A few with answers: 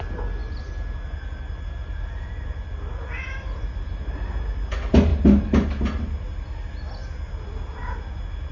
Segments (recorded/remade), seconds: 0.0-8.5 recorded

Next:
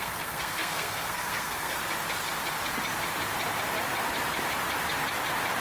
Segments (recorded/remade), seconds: 0.0-1.8 remade; 1.8-5.6 recorded

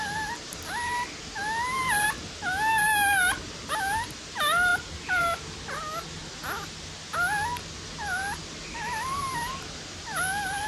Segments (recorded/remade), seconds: 0.0-10.7 recorded

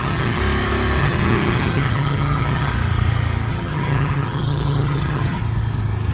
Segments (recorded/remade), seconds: 0.0-0.4 remade; 0.4-1.0 recorded; 1.0-2.7 remade; 2.7-3.5 recorded; 3.5-5.4 remade; 5.4-6.1 recorded

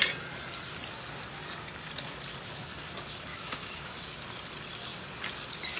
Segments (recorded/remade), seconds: 0.0-3.3 recorded; 3.3-4.1 remade; 4.1-5.8 recorded

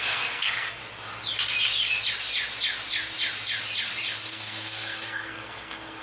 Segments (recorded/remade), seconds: 0.0-0.8 remade; 0.8-4.3 recorded; 4.3-6.0 remade

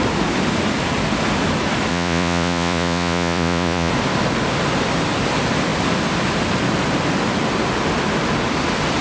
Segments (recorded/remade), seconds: 0.0-1.9 recorded; 1.9-3.9 remade; 3.9-9.0 recorded

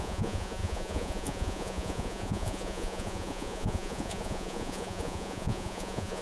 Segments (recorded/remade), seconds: 0.0-6.2 remade